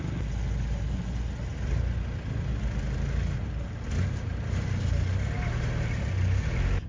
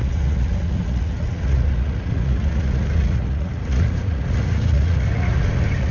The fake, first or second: second